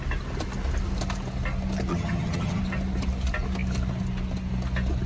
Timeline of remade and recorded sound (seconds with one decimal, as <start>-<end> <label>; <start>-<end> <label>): 0.0-1.9 recorded; 1.9-2.6 remade; 2.6-5.1 recorded